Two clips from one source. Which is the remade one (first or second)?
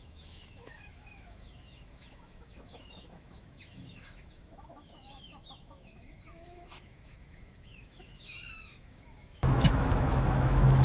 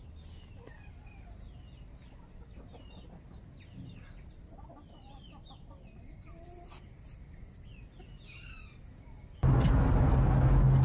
first